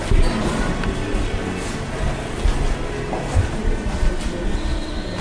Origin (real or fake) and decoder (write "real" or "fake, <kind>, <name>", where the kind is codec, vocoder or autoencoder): real